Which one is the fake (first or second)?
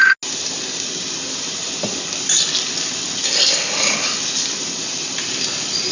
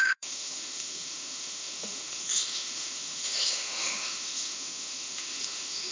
second